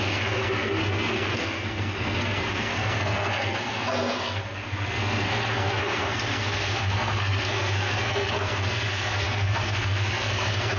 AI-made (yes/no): yes